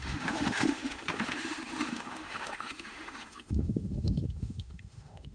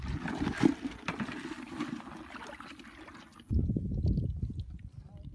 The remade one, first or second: first